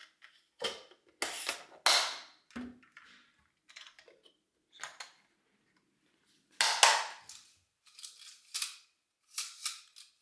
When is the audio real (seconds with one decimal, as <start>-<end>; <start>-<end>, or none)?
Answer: 0.0-10.2